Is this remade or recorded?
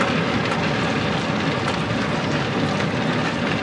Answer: recorded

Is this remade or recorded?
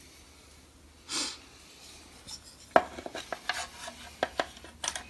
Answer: recorded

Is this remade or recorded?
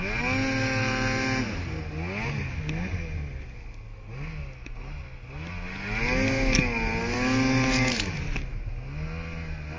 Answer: recorded